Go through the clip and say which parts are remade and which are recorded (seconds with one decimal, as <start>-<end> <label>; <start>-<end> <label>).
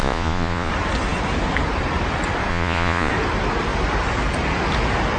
0.0-0.7 remade; 0.7-2.5 recorded; 2.5-3.1 remade; 3.1-5.2 recorded